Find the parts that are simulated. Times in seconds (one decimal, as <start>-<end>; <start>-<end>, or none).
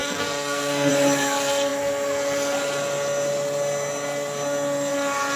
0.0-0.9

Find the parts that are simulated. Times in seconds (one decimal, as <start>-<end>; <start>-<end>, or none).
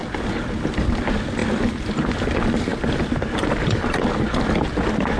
0.0-0.8; 1.4-2.3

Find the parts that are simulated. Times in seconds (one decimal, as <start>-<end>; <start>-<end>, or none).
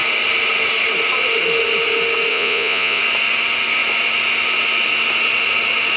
2.3-3.0